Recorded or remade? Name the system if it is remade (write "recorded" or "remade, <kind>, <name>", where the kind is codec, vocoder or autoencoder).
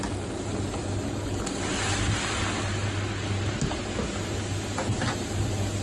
recorded